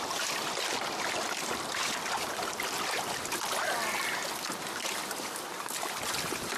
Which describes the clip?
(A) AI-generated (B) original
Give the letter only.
B